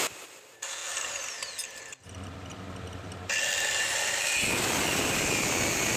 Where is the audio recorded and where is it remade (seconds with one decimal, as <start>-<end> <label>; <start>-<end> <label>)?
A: 0.0-6.0 recorded